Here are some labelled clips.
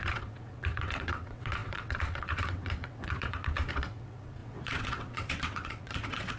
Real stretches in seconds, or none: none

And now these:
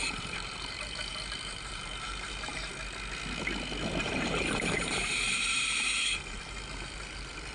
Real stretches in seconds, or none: 2.7-4.0

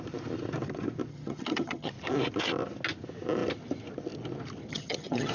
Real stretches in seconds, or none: 0.0-1.1; 1.9-4.7

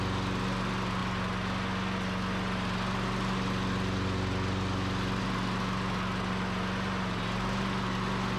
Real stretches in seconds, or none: 0.0-8.4

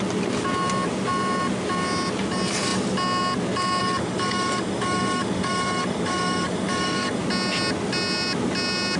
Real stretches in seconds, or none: 0.0-3.8; 7.2-9.0

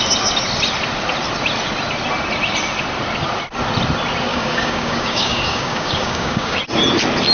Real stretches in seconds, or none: 0.0-4.3; 6.6-7.3

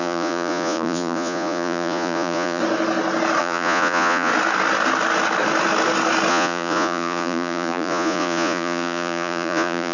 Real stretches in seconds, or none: 2.6-3.4; 4.3-6.3